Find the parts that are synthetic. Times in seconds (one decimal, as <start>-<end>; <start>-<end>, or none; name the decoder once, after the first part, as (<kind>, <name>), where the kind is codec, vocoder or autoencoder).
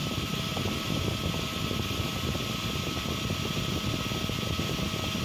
0.0-1.0 (vocoder, BigVGAN v2)